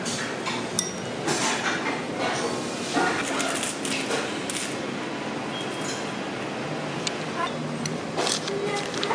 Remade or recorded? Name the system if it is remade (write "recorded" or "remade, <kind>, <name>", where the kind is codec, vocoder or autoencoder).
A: recorded